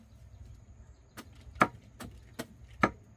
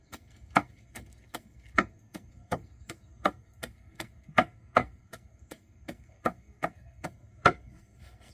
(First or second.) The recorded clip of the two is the first